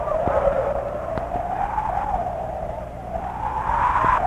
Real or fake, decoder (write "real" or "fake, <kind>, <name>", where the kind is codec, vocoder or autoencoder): fake, vocoder, BigVGAN v2